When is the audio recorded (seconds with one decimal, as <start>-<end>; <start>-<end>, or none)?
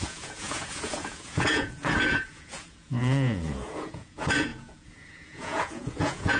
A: none